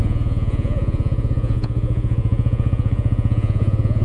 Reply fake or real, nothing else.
fake